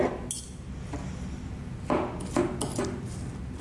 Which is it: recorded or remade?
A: recorded